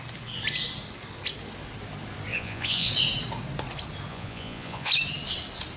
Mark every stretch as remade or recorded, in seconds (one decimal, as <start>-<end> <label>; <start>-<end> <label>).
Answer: 0.0-2.3 recorded; 2.3-2.9 remade; 2.9-4.1 recorded; 4.1-4.9 remade; 4.9-5.8 recorded